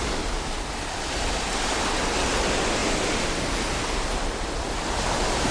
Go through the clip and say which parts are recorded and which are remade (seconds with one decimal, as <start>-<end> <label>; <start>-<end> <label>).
0.0-5.5 recorded